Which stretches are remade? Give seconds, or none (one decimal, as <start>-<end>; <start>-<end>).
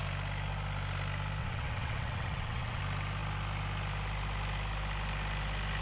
1.4-2.8